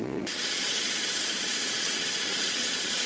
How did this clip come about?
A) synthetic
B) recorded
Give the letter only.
A